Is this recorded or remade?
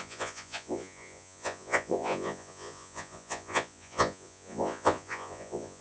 remade